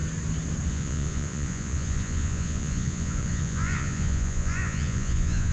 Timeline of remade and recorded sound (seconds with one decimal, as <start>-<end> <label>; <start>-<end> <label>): 0.0-0.7 recorded; 0.7-5.5 remade